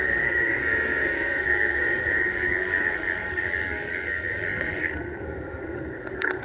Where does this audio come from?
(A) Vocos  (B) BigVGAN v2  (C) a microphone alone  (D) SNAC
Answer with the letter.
D